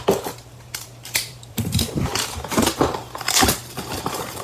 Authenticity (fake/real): fake